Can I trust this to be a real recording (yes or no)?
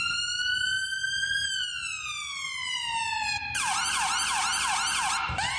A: yes